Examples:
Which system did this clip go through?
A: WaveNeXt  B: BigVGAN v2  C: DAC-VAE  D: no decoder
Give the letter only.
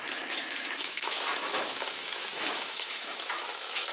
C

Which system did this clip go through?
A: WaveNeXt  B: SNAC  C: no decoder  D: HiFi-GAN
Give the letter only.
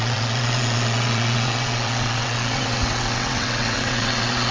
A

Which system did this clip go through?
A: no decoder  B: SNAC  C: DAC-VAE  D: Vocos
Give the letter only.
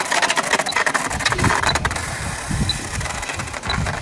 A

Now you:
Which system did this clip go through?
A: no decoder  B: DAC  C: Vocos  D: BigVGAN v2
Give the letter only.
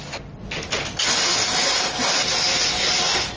A